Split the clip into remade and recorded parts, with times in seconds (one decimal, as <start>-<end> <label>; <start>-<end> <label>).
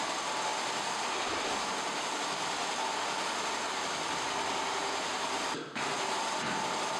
0.0-7.0 recorded